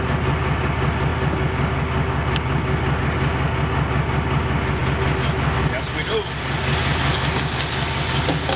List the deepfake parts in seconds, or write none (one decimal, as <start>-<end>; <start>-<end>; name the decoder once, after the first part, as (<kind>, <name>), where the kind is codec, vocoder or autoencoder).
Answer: none